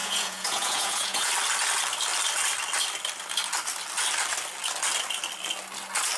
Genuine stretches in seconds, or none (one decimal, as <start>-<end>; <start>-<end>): 1.3-6.2